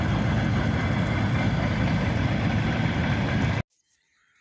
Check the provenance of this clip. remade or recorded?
recorded